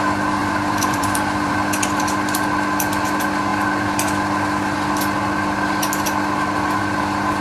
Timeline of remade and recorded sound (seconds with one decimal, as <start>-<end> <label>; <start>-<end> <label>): 0.0-0.4 recorded; 0.4-1.5 remade; 1.5-7.4 recorded